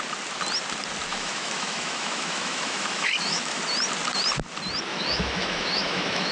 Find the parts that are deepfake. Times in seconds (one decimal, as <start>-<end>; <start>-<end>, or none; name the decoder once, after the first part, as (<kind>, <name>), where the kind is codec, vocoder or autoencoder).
1.1-3.6 (autoencoder, DAC-VAE); 4.9-6.3